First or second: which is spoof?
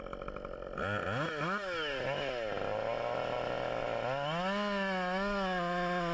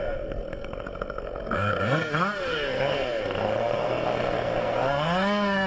second